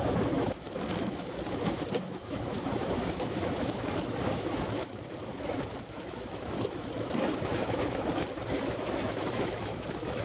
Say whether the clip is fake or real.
fake